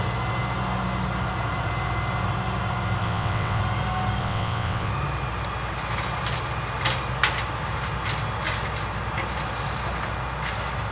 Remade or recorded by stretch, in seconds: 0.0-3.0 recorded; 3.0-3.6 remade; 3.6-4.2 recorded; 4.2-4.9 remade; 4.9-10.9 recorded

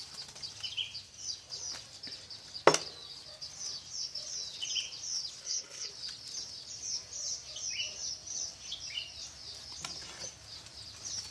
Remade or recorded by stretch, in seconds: 0.0-5.4 recorded; 5.4-5.9 remade; 5.9-11.3 recorded

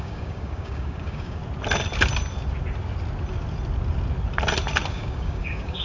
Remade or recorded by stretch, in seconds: 0.0-1.4 remade; 1.4-4.9 recorded; 4.9-5.8 remade

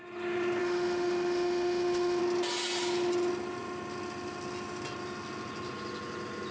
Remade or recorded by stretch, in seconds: 0.0-0.6 recorded; 0.6-2.2 remade; 2.2-6.5 recorded

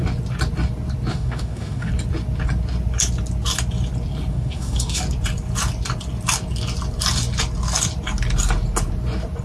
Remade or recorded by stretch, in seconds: 0.0-1.1 recorded; 1.1-1.9 remade; 1.9-4.3 recorded; 4.3-5.0 remade; 5.0-9.4 recorded

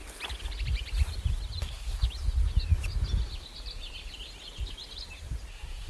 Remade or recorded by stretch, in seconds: 0.0-1.6 recorded; 1.6-2.0 remade; 2.0-5.5 recorded; 5.5-5.9 remade